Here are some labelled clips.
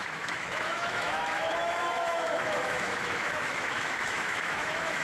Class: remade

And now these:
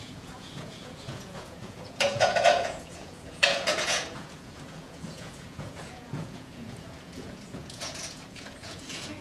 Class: remade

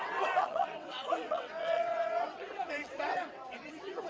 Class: remade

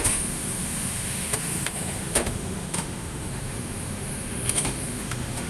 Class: remade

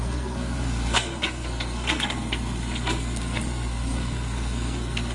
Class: remade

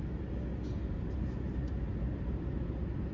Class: recorded